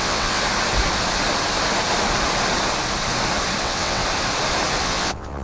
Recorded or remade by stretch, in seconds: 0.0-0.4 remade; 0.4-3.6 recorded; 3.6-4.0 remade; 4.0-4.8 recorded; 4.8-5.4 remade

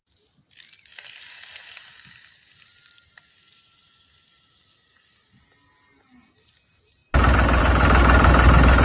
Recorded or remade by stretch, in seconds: 0.0-0.9 recorded; 0.9-1.5 remade; 1.5-8.8 recorded

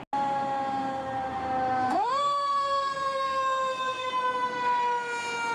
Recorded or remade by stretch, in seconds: 0.0-1.9 recorded; 1.9-4.1 remade; 4.1-5.5 recorded

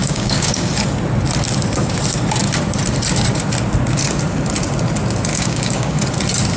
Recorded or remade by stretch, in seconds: 0.0-0.7 remade; 0.7-5.3 recorded; 5.3-6.0 remade; 6.0-6.6 recorded